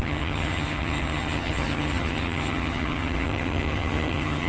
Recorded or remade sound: remade